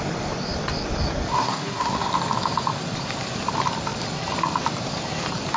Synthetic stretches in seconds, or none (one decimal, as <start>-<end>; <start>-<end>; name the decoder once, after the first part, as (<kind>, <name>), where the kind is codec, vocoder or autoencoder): 1.3-2.1 (codec, SNAC)